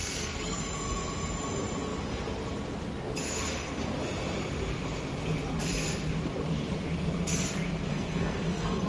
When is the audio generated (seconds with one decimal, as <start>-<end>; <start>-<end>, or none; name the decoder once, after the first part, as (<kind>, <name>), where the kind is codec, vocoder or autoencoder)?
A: 0.0-0.6 (codec, SNAC); 7.9-8.9